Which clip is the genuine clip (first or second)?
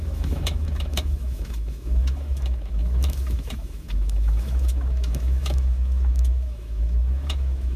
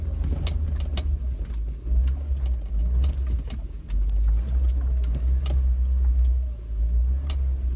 second